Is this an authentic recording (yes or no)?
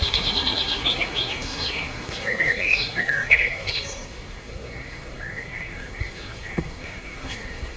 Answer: no